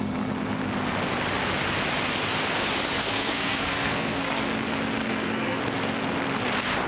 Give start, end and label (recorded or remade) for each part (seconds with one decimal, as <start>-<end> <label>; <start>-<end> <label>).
0.0-3.0 recorded; 3.0-4.4 remade; 4.4-5.0 recorded; 5.0-5.6 remade; 5.6-6.9 recorded